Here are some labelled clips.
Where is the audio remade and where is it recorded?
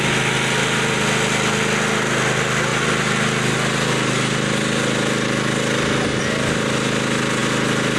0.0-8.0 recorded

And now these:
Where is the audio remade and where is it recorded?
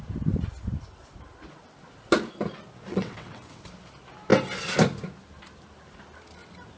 0.0-2.9 recorded; 2.9-3.6 remade; 3.6-6.8 recorded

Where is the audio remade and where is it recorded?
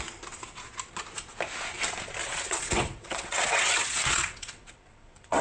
0.0-2.2 recorded; 2.2-5.4 remade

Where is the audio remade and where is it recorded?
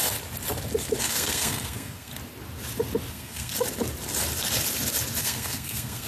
0.0-1.0 recorded; 1.0-2.1 remade; 2.1-3.1 recorded; 3.1-3.5 remade; 3.5-5.2 recorded; 5.2-6.1 remade